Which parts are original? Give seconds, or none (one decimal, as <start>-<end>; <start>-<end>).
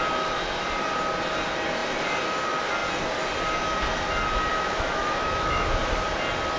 0.0-4.5; 5.8-6.6